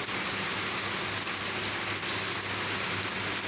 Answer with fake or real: real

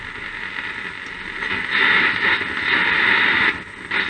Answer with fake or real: real